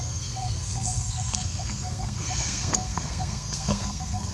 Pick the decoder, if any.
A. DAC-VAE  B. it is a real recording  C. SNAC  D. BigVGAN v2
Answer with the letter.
C